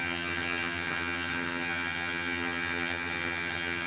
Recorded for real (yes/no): no